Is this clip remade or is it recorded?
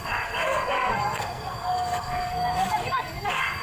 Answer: remade